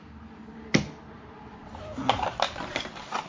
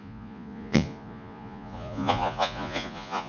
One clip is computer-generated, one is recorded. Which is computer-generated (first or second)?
second